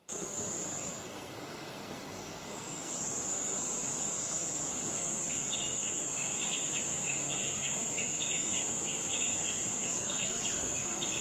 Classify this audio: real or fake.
fake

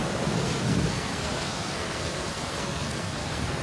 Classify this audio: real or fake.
fake